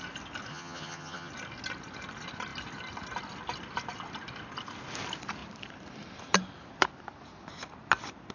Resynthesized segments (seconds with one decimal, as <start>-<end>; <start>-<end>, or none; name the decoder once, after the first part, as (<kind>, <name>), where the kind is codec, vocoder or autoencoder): 0.5-1.3 (vocoder, HiFi-GAN)